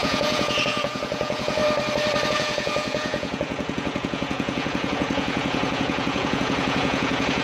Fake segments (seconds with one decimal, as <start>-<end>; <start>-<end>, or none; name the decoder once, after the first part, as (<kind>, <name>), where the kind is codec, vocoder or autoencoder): 0.0-1.6 (vocoder, Vocos); 2.3-7.4